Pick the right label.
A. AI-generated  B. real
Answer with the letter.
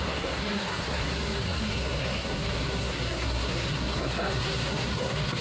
A